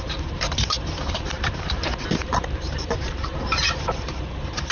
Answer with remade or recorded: remade